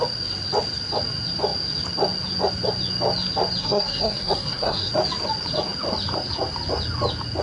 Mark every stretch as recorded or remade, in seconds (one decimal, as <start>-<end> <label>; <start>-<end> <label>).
0.0-3.6 recorded; 3.6-4.9 remade; 4.9-7.4 recorded